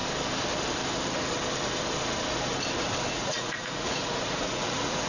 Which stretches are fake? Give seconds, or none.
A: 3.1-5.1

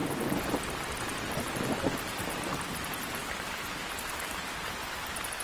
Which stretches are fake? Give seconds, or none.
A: 2.7-5.4

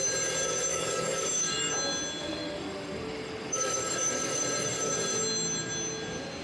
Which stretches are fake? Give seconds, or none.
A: 0.7-1.7; 2.2-4.3

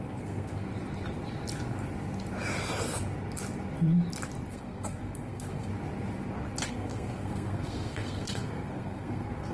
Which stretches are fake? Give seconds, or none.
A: 0.0-0.7; 4.5-5.7; 6.7-9.5

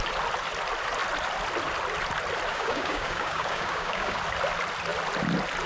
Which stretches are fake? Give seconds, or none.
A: 2.5-4.2